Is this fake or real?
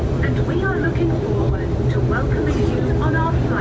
fake